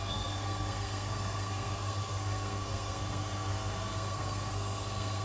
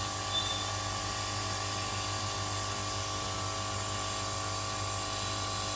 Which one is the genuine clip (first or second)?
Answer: second